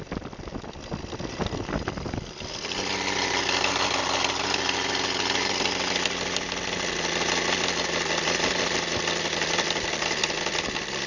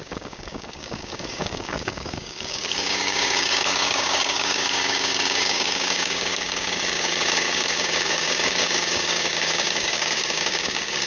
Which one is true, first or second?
first